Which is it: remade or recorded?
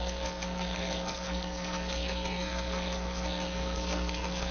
remade